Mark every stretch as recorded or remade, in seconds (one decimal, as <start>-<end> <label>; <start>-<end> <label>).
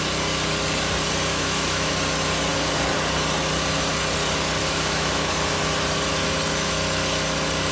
0.0-1.3 recorded; 1.3-1.9 remade; 1.9-4.6 recorded; 4.6-5.3 remade; 5.3-7.7 recorded